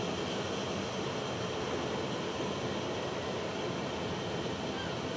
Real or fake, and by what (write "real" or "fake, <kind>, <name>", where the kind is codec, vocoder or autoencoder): real